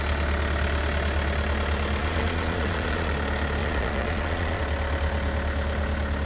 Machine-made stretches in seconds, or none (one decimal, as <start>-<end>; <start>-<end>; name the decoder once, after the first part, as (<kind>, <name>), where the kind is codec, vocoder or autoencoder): 2.0-3.1 (vocoder, Vocos); 3.6-4.6